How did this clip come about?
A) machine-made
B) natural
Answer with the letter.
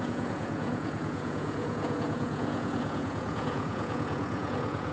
A